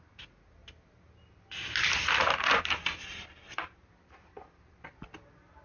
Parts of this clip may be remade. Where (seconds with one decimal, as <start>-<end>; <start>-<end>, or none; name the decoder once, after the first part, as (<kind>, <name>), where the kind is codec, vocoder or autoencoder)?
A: none